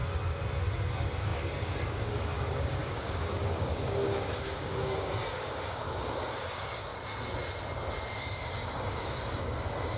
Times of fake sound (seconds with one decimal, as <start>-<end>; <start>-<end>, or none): 0.9-6.9; 8.2-10.0